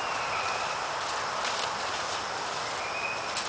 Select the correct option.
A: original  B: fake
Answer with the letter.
A